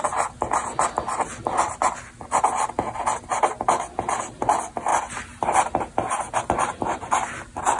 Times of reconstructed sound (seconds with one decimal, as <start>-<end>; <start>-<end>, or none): none